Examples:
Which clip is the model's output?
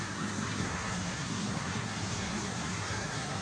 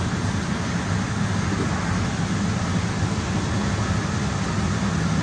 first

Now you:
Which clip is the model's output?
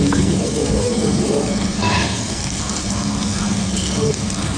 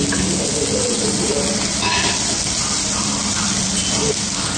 first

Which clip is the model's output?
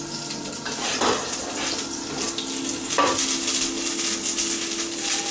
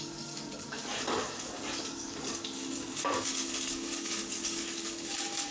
second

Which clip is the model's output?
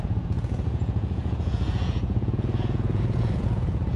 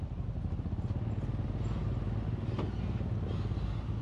first